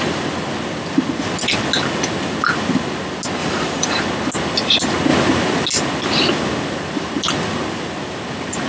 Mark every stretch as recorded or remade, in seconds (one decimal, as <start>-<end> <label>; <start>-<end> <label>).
0.0-3.4 recorded; 3.4-4.0 remade; 4.0-8.7 recorded